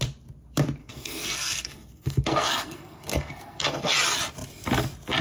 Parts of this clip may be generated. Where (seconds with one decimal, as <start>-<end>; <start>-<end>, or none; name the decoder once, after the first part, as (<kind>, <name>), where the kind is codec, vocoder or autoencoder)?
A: 0.8-3.9 (codec, SNAC)